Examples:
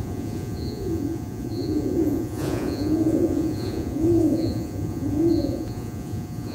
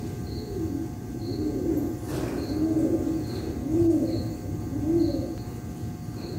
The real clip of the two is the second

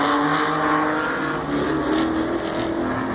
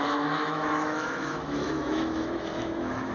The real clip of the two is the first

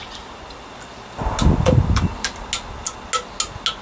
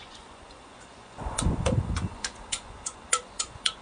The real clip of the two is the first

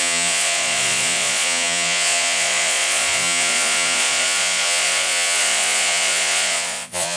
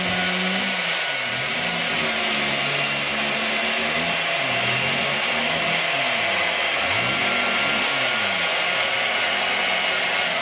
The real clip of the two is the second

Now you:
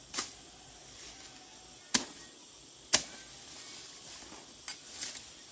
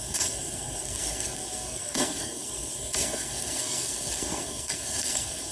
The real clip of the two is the first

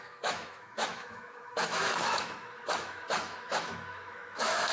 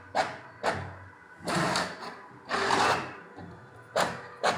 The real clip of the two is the second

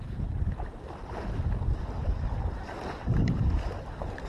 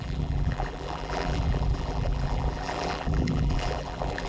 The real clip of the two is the first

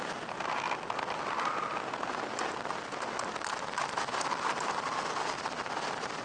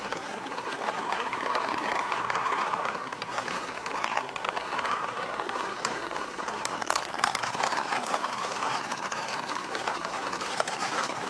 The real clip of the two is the first